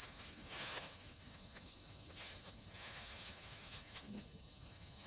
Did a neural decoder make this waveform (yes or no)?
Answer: yes